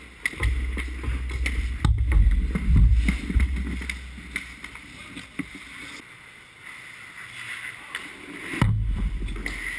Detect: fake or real real